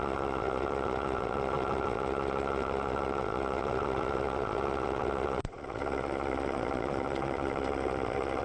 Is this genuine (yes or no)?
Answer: no